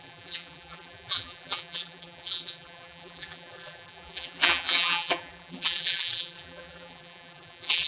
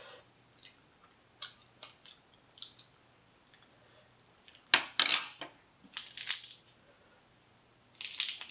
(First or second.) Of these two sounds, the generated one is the first